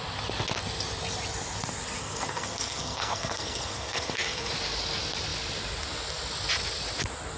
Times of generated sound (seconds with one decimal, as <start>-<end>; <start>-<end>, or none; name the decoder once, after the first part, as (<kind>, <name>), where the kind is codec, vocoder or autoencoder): 2.0-4.5 (codec, SNAC)